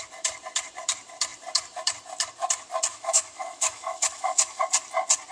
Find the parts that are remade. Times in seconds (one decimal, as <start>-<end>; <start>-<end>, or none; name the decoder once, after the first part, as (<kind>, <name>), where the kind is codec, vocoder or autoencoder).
2.9-4.6 (autoencoder, DAC-VAE)